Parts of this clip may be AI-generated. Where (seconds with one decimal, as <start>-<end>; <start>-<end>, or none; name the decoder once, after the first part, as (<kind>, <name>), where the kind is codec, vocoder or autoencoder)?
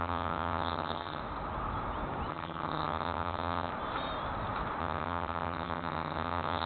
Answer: 0.0-1.2 (vocoder, HiFi-GAN); 2.3-3.7; 4.8-6.7